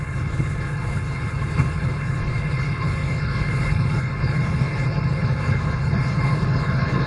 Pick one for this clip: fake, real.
fake